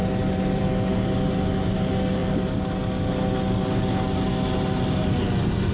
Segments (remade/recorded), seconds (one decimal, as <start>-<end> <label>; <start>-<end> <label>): 0.0-5.7 recorded